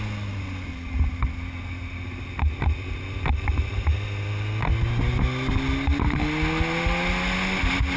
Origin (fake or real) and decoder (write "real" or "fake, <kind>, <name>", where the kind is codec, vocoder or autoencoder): real